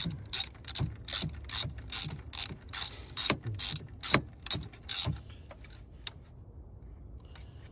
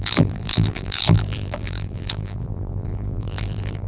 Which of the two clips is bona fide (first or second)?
first